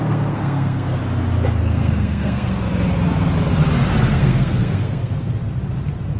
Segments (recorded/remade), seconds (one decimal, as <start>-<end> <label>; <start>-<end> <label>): 0.0-1.0 remade; 1.0-1.6 recorded; 1.6-2.6 remade; 2.6-4.1 recorded; 4.1-5.4 remade; 5.4-6.2 recorded